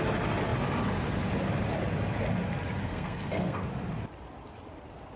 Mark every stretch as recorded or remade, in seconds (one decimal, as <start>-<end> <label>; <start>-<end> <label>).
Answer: 0.0-2.8 recorded; 2.8-3.7 remade; 3.7-5.2 recorded